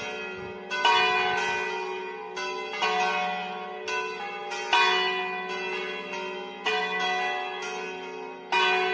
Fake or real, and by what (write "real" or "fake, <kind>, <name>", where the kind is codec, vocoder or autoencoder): real